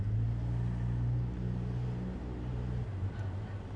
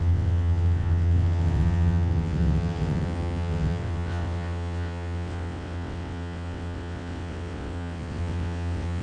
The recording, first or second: first